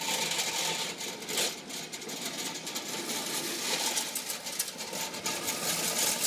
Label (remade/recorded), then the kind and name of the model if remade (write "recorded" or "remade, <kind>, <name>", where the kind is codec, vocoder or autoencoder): recorded